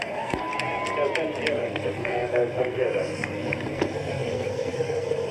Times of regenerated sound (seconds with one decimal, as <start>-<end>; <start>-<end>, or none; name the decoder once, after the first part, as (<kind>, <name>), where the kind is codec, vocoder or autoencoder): 0.0-0.5 (codec, SNAC); 1.5-5.3